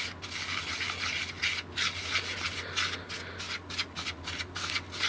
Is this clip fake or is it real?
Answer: real